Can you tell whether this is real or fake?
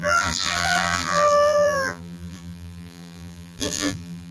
fake